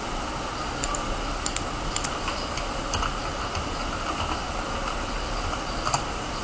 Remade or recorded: recorded